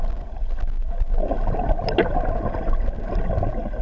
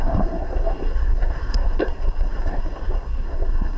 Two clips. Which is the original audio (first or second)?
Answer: first